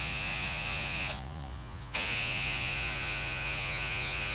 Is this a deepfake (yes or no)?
yes